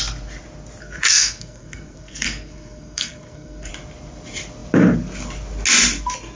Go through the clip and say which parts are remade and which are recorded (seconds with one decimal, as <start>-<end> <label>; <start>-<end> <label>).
0.0-0.8 recorded; 0.8-3.7 remade; 3.7-6.4 recorded